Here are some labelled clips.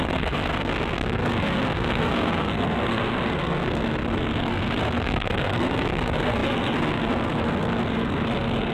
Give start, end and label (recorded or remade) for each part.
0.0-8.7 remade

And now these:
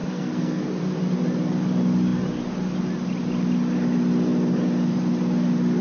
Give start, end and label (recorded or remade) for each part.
0.0-0.6 remade; 0.6-5.8 recorded

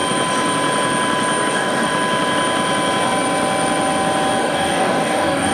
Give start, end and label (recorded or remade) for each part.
0.0-1.5 recorded; 1.5-1.9 remade; 1.9-4.4 recorded; 4.4-5.5 remade

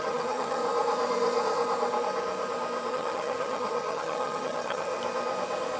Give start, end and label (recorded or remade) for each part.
0.0-0.6 remade; 0.6-2.9 recorded; 2.9-4.9 remade; 4.9-5.8 recorded

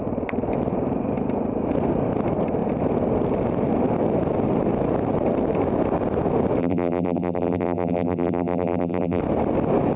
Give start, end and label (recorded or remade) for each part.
0.0-6.6 recorded; 6.6-9.2 remade; 9.2-10.0 recorded

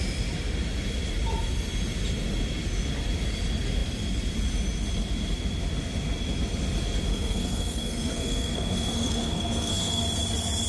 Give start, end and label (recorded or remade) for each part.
0.0-7.1 recorded; 7.1-10.0 remade; 10.0-10.7 recorded